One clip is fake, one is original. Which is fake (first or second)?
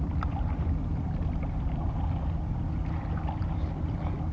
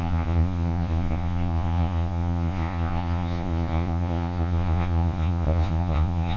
second